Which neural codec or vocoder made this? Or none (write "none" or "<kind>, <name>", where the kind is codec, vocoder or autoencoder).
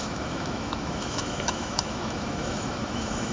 autoencoder, DAC-VAE